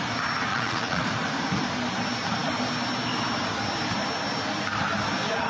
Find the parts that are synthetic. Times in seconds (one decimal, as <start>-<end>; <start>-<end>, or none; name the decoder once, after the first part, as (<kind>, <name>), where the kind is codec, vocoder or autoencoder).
0.5-1.0 (vocoder, Vocos)